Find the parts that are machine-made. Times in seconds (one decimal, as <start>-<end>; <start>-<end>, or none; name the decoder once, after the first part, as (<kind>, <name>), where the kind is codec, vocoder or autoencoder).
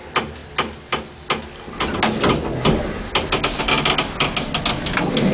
none